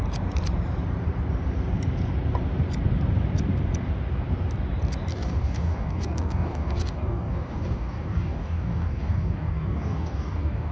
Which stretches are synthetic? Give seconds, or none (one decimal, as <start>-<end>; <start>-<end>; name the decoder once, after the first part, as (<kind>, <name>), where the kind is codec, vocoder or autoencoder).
5.1-10.7 (codec, DAC)